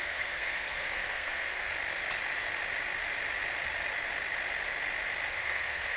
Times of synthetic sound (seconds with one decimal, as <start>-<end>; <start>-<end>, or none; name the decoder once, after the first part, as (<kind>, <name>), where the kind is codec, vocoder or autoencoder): 0.0-1.7 (codec, SNAC); 5.3-6.0